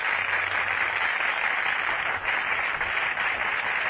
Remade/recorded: recorded